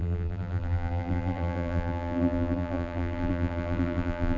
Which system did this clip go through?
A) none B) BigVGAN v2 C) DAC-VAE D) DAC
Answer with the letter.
B